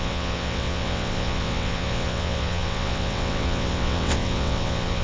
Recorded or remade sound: remade